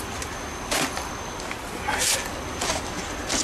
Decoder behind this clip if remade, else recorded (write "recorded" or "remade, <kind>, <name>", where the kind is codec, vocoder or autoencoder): recorded